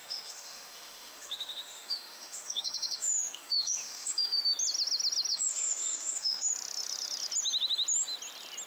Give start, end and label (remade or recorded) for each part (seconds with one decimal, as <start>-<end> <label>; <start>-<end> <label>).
0.0-4.4 remade; 4.4-5.3 recorded; 5.3-6.5 remade; 6.5-8.7 recorded